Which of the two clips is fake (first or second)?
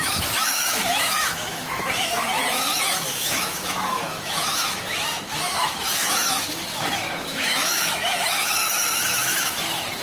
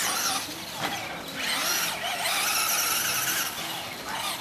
first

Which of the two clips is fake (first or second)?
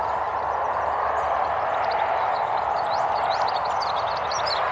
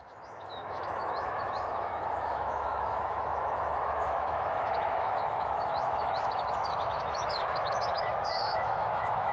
second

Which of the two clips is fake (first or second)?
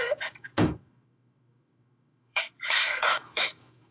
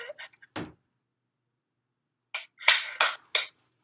first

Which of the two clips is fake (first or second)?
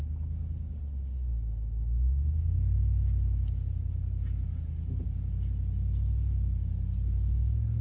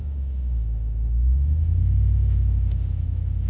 second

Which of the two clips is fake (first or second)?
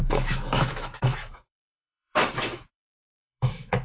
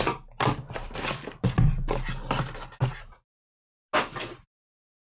first